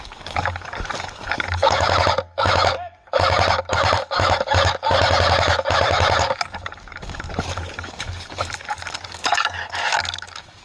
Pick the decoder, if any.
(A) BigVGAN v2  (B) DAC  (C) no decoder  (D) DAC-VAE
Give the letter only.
B